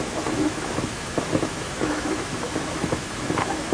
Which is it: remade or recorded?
remade